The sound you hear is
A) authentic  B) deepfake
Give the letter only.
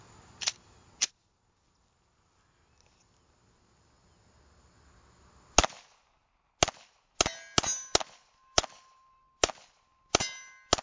A